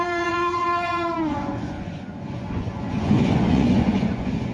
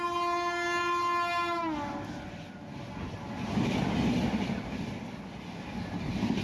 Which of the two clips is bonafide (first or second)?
second